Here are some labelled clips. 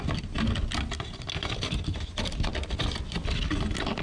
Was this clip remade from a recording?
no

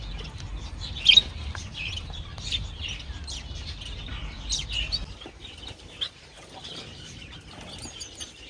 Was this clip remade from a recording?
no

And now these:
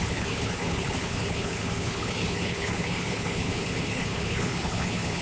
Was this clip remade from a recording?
yes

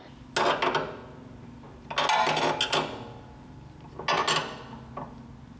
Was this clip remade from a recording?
no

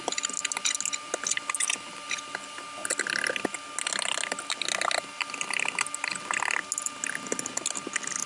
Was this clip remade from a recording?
no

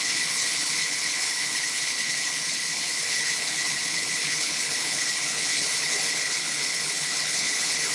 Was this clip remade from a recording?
yes